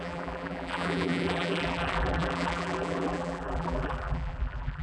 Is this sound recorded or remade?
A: remade